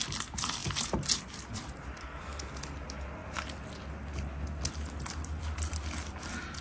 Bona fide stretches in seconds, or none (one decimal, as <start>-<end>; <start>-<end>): 0.0-2.0; 2.6-6.6